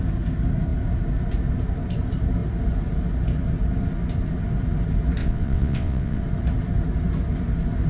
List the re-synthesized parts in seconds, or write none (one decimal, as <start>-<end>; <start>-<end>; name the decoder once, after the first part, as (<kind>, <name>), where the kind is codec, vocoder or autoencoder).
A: 5.2-6.2 (vocoder, WaveNeXt)